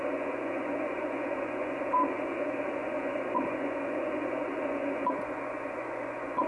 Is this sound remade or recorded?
remade